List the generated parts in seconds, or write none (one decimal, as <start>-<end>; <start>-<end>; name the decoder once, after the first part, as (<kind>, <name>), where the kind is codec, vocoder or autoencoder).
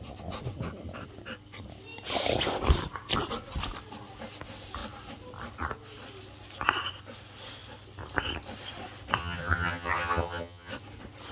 9.2-10.7 (vocoder, HiFi-GAN)